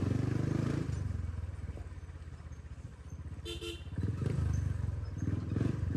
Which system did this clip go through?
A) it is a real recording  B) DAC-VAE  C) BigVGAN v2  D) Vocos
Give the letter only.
A